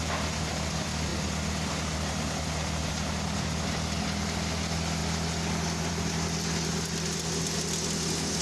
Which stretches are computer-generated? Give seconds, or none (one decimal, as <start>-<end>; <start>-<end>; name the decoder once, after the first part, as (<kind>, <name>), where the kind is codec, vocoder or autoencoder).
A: none